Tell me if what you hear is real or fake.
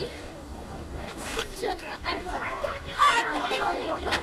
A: fake